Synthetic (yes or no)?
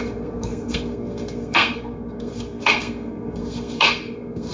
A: yes